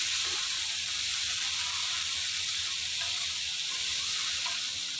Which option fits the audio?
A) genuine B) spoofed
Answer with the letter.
B